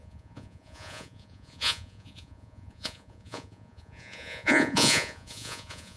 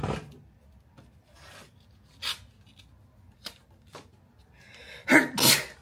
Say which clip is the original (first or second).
second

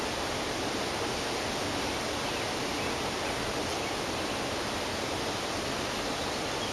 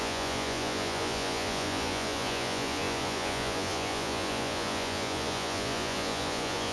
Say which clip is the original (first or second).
first